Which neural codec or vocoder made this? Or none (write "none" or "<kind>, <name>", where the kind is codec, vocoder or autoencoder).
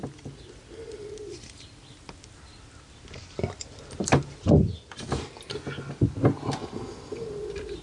none